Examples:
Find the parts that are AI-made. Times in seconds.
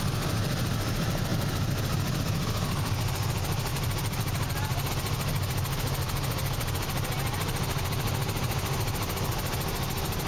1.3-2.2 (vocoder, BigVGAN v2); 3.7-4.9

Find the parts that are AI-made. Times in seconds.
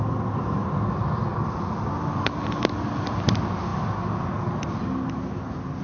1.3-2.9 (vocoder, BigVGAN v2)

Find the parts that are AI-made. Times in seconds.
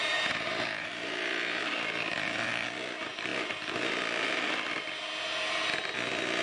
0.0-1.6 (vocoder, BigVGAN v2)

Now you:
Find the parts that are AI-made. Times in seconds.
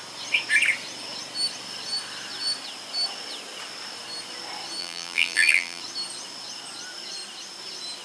4.8-5.8 (vocoder, BigVGAN v2)